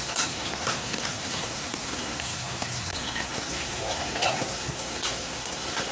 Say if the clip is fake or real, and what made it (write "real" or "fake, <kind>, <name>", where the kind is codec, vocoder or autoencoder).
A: fake, codec, SNAC